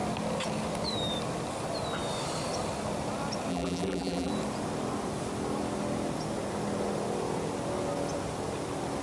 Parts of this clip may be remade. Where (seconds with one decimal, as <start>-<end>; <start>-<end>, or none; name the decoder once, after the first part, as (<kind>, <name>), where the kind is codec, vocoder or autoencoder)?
3.5-4.3 (vocoder, BigVGAN v2)